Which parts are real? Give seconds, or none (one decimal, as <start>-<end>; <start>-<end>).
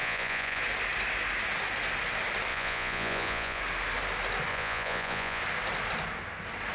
0.6-2.5; 3.6-4.5; 5.4-6.7